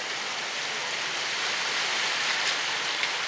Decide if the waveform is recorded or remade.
recorded